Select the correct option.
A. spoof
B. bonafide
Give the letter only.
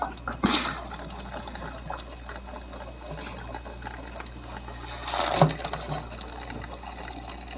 B